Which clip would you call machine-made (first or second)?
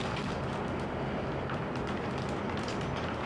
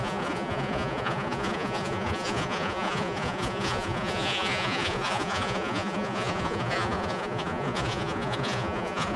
second